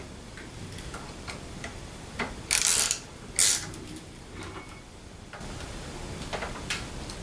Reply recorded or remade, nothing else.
recorded